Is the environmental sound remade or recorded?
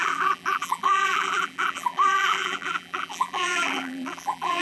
remade